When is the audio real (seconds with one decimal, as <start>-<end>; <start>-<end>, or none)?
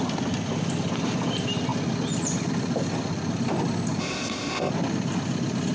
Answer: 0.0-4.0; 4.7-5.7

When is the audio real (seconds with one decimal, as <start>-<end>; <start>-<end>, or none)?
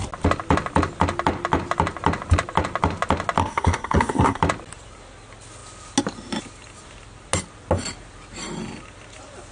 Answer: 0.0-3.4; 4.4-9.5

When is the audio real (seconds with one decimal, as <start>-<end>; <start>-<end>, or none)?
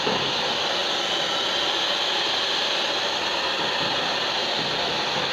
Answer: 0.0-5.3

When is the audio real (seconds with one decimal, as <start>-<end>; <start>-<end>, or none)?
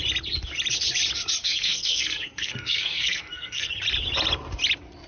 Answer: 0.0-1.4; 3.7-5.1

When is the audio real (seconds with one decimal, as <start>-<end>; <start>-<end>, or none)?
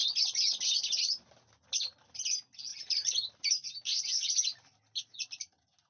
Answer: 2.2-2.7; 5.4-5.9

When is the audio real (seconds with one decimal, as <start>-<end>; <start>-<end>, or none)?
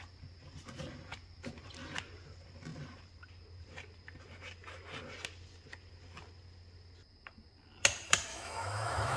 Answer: 0.0-8.3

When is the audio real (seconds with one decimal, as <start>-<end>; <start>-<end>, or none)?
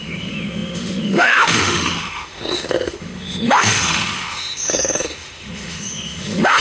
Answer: none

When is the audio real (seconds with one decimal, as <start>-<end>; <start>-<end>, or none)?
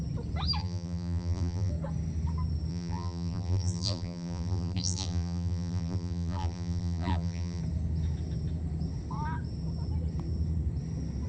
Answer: 0.0-0.6; 1.7-2.7; 7.6-11.3